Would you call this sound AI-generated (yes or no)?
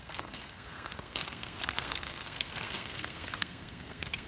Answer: yes